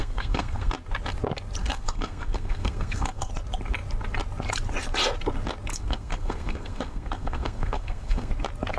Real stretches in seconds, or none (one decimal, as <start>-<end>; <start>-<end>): 0.7-1.6; 3.3-5.7; 8.3-8.8

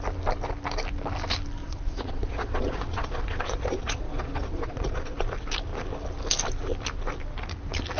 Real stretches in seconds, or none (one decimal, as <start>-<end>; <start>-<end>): 0.0-1.6; 5.2-8.0

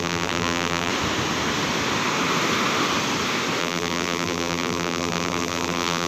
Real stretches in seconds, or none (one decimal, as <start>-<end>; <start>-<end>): 0.9-3.6

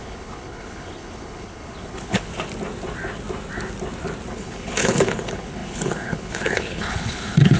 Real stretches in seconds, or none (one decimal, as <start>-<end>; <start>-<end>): 2.3-4.3